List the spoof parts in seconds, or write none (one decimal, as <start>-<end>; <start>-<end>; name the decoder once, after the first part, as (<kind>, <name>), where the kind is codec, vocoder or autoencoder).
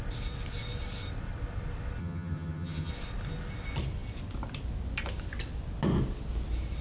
2.0-2.9 (vocoder, HiFi-GAN)